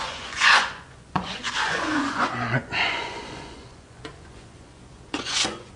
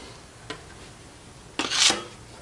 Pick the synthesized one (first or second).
first